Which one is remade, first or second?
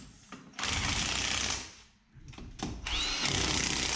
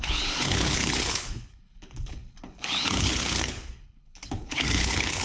second